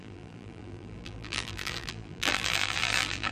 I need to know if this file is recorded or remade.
remade